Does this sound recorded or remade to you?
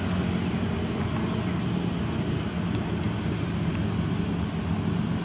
recorded